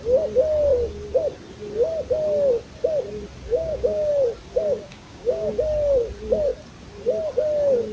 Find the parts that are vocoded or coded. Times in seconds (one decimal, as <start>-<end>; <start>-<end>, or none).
3.5-4.1; 4.9-5.5